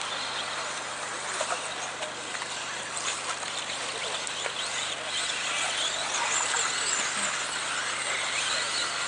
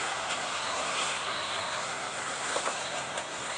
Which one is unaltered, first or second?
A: first